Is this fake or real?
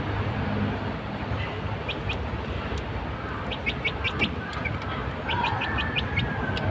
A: real